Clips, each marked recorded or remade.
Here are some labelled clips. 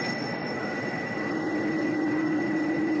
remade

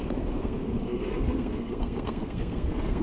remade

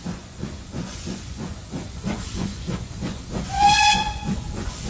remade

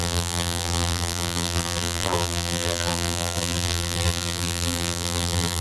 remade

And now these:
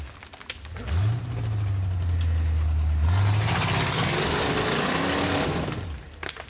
recorded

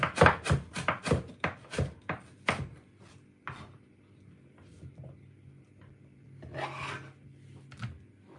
recorded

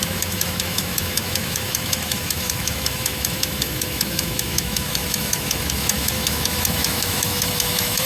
remade